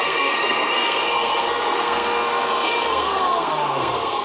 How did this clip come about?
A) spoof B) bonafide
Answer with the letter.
A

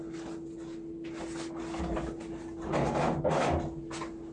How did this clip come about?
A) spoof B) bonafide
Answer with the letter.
B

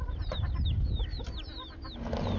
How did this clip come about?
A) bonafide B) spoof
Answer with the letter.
A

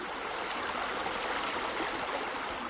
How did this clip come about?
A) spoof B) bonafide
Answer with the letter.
B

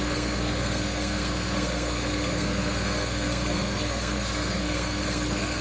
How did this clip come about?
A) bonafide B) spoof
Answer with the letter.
B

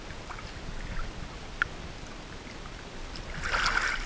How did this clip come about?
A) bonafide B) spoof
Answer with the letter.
A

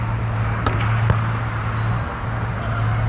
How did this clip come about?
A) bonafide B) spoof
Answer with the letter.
A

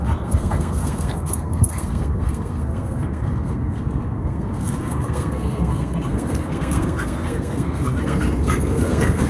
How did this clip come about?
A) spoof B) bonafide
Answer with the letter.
A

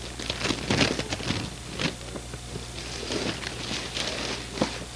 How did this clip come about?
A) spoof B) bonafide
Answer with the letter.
B